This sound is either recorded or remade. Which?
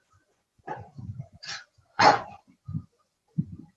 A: remade